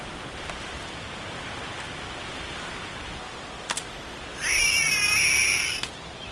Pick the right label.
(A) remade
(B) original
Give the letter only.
B